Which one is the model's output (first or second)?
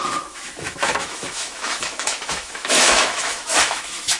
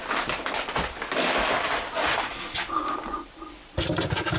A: first